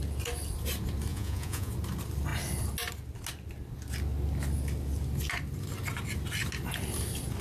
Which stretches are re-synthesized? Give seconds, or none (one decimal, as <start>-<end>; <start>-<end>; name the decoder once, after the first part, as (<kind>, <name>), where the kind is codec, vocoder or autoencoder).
1.1-1.7 (vocoder, Vocos)